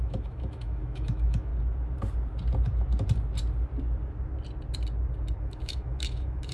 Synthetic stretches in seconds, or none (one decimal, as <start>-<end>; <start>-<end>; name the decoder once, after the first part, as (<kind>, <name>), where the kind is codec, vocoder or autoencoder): 0.0-1.5 (autoencoder, DAC-VAE); 5.4-6.5

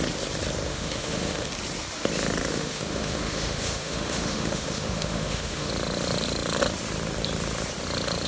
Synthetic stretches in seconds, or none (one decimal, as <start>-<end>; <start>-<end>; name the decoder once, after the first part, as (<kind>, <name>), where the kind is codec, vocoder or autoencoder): 0.7-1.5 (autoencoder, DAC-VAE); 2.5-5.7

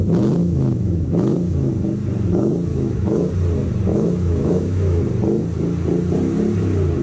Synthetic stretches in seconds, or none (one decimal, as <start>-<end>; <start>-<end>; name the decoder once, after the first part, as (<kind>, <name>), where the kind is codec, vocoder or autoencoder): 0.4-1.7 (autoencoder, DAC-VAE); 2.7-3.3; 3.9-5.0

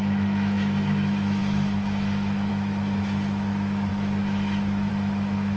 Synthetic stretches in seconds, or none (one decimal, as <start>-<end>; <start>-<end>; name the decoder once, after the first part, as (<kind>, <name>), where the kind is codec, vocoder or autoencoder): 0.0-5.6 (autoencoder, DAC-VAE)

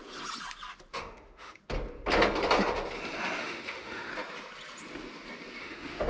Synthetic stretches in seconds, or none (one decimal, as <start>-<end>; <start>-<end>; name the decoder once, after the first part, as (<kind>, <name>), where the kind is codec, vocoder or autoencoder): 0.9-1.6 (autoencoder, DAC-VAE); 3.4-4.1; 5.6-6.1